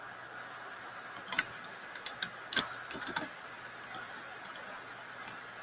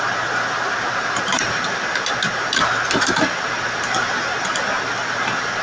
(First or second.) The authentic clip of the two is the first